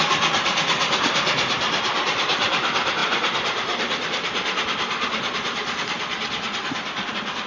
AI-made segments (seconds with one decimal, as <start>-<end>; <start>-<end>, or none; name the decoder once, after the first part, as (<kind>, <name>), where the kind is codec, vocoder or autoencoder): none